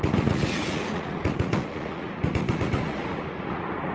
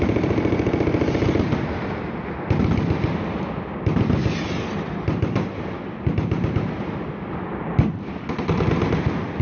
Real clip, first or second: second